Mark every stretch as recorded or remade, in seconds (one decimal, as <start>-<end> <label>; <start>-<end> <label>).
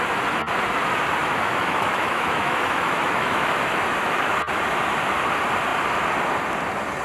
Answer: 0.0-1.2 recorded; 1.2-4.3 remade; 4.3-7.0 recorded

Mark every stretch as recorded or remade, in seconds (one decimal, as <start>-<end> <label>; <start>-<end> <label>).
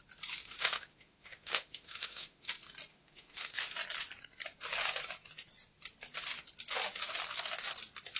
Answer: 0.0-0.4 recorded; 0.4-2.5 remade; 2.5-2.9 recorded; 2.9-3.7 remade; 3.7-8.2 recorded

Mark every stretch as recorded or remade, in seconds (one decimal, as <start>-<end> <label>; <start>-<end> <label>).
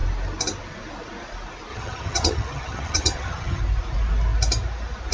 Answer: 0.0-1.7 recorded; 1.7-3.6 remade; 3.6-5.1 recorded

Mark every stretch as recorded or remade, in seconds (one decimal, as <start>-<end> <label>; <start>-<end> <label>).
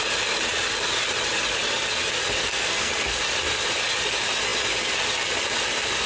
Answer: 0.0-2.4 recorded; 2.4-2.9 remade; 2.9-6.1 recorded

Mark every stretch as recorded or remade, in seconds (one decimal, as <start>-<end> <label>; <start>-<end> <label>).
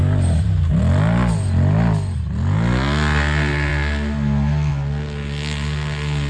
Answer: 0.0-6.3 recorded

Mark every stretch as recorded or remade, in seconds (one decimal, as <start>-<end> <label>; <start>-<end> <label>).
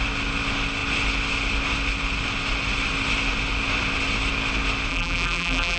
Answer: 0.0-4.9 recorded; 4.9-5.8 remade